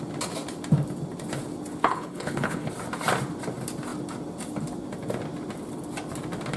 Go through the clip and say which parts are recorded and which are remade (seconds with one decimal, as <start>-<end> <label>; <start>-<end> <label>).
0.0-1.8 recorded; 1.8-2.7 remade; 2.7-6.6 recorded